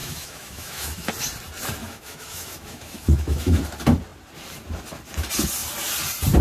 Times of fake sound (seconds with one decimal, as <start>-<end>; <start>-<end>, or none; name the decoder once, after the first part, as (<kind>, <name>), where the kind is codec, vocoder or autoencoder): 0.0-1.1 (autoencoder, DAC-VAE); 1.8-3.6